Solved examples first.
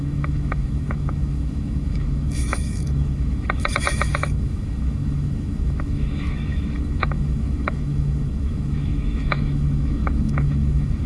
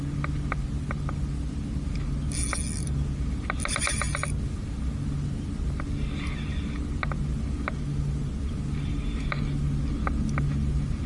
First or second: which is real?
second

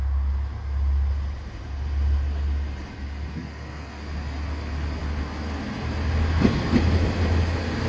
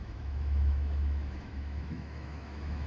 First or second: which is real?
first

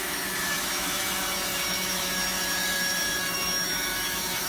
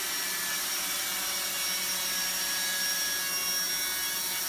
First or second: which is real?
second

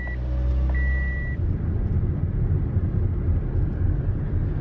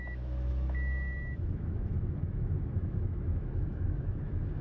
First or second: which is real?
first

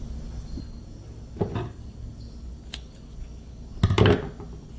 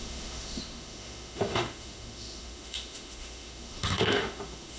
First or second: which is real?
first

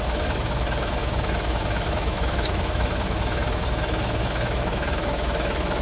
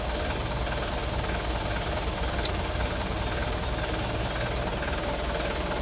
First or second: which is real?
second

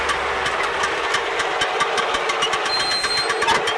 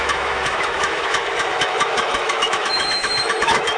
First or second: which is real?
first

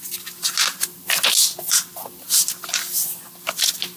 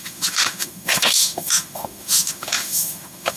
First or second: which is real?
first